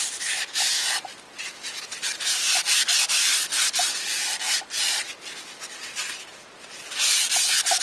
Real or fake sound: real